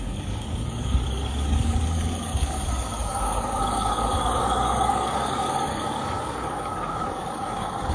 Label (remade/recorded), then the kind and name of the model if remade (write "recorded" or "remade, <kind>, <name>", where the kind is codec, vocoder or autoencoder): remade, codec, DAC